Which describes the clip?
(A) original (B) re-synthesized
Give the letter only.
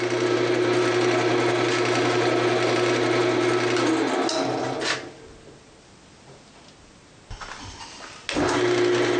A